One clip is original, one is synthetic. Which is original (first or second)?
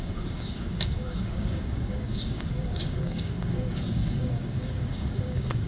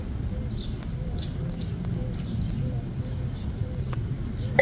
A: second